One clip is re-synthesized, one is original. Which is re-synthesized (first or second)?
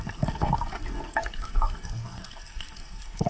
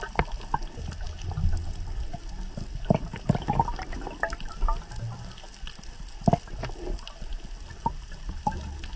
first